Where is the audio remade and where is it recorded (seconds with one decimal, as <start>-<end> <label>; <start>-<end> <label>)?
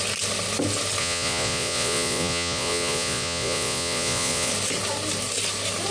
0.0-1.0 recorded; 1.0-4.5 remade; 4.5-5.9 recorded